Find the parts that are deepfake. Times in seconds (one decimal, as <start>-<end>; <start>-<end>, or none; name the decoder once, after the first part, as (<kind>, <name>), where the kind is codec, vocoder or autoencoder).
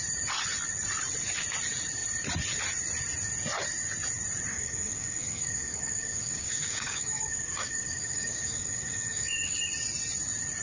4.5-9.7 (codec, DAC)